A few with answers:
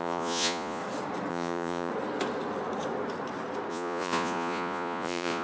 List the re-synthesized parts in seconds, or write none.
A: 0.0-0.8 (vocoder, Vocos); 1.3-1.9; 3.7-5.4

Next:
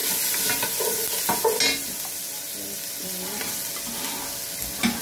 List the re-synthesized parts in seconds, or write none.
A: none

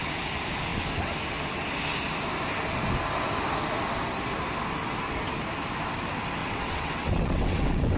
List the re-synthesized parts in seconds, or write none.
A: 6.4-8.0 (vocoder, WaveNeXt)

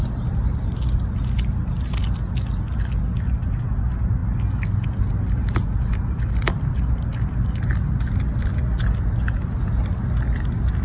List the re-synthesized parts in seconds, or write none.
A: none

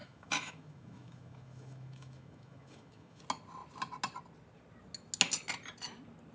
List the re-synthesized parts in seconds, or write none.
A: 0.0-3.2 (autoencoder, DAC-VAE)